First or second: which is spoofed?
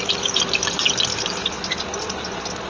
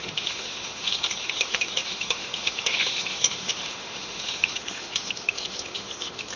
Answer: second